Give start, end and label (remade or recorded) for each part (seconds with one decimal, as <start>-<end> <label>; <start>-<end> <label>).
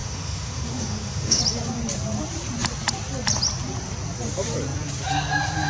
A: 0.0-1.4 remade; 1.4-5.7 recorded